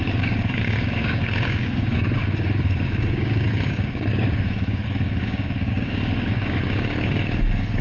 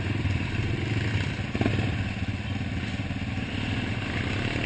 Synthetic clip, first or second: first